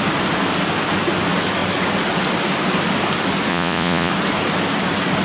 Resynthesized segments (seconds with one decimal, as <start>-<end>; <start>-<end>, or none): 3.5-4.1